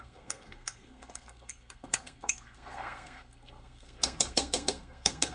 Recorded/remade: remade